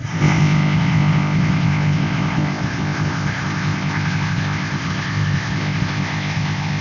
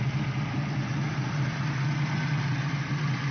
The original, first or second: second